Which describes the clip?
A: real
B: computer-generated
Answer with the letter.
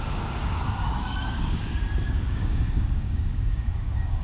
B